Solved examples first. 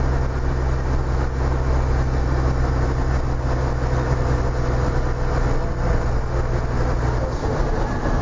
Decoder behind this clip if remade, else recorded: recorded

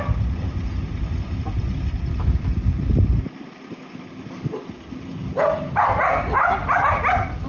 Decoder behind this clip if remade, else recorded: recorded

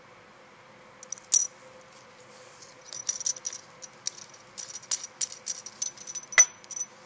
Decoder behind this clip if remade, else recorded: recorded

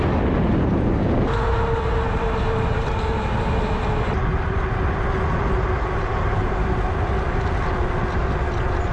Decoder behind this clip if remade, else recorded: recorded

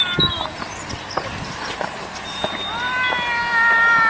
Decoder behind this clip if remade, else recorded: recorded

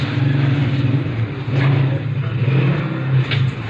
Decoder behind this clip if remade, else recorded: recorded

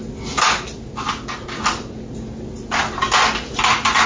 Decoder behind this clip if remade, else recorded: recorded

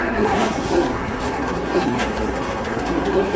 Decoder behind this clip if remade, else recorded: remade, codec, SNAC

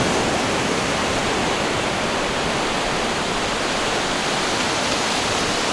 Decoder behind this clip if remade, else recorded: remade, vocoder, BigVGAN v2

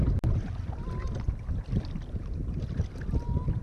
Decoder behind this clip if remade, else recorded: recorded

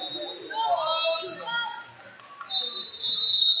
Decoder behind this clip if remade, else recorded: recorded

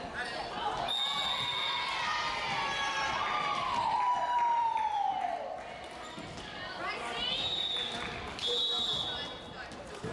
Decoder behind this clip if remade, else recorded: recorded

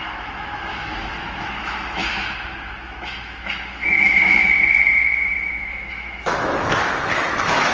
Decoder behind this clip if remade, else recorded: remade, autoencoder, DAC-VAE